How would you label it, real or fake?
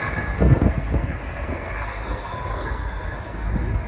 fake